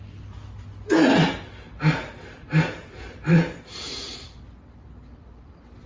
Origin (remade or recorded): recorded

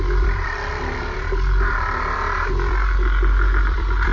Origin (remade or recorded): remade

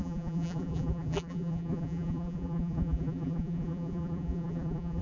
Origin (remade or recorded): remade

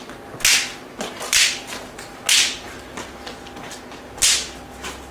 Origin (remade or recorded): recorded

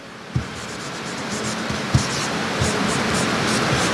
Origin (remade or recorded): remade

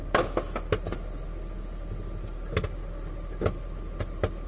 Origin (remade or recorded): recorded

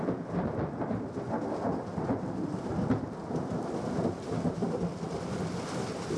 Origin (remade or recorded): recorded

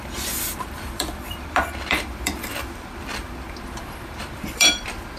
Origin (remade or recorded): remade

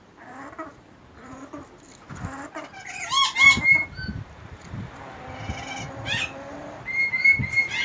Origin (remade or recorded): recorded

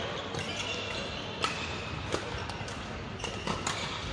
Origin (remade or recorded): recorded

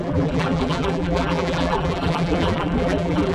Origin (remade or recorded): remade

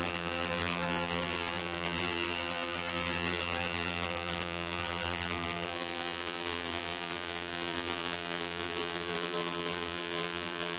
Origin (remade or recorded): remade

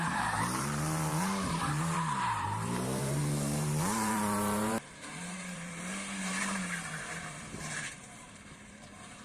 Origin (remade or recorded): remade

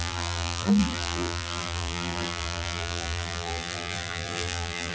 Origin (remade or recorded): remade